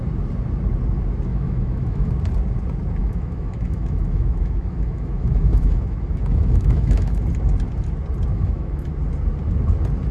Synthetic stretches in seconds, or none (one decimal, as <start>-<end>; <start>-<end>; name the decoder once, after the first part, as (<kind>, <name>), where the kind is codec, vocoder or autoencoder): 1.3-2.1 (autoencoder, DAC-VAE); 3.0-7.2; 8.3-8.9